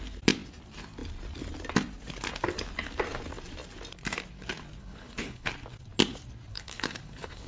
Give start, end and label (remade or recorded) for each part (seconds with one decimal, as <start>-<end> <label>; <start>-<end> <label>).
0.0-4.8 recorded; 4.8-5.5 remade; 5.5-6.5 recorded; 6.5-7.5 remade